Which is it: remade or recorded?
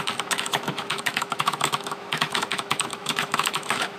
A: remade